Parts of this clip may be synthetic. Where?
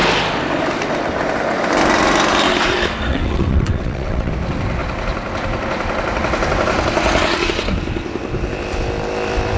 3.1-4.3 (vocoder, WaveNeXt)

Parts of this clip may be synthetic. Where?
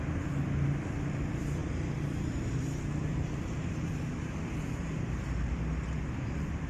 1.6-5.6 (vocoder, BigVGAN v2)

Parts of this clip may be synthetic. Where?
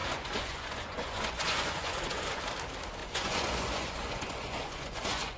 0.0-2.4 (vocoder, Vocos); 3.0-5.4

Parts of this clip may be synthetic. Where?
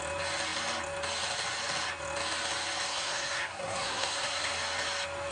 2.9-4.5 (codec, SNAC)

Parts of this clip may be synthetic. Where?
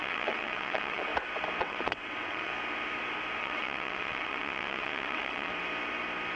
0.0-1.1 (vocoder, WaveNeXt); 1.6-2.5; 3.4-5.5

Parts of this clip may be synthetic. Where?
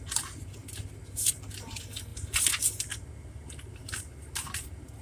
none